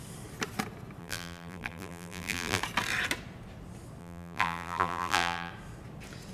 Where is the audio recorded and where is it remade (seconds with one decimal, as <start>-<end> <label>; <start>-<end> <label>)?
0.0-1.0 recorded; 1.0-2.6 remade; 2.6-4.0 recorded; 4.0-5.5 remade; 5.5-6.3 recorded